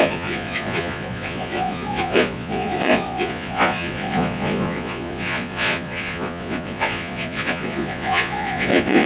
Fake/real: fake